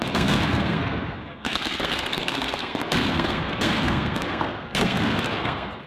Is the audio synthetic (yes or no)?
yes